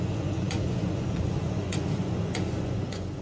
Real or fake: fake